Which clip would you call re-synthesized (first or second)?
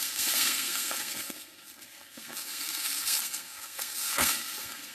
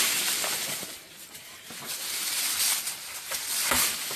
first